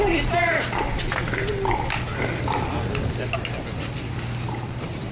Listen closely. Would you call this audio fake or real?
real